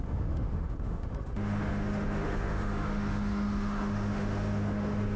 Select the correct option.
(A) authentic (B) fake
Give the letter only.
B